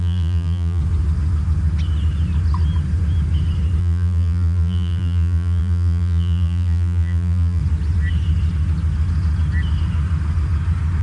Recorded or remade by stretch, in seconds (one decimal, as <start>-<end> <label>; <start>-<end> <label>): 0.0-0.8 remade; 0.8-3.8 recorded; 3.8-7.6 remade; 7.6-11.0 recorded